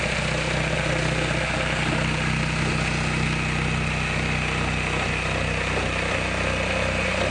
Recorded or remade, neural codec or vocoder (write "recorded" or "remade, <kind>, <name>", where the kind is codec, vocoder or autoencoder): recorded